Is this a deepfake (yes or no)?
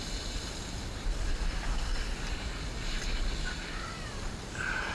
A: no